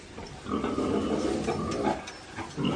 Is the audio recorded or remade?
recorded